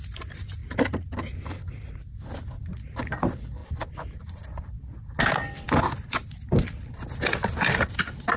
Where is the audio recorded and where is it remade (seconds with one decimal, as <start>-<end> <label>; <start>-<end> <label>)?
0.0-8.4 recorded